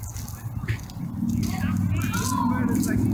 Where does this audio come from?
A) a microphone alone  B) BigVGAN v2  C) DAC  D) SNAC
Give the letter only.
A